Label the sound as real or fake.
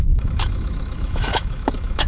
fake